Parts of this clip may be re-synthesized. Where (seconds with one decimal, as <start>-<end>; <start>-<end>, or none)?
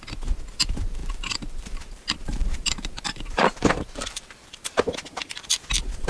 1.0-4.7